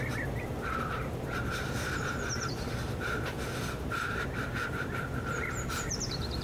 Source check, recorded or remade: remade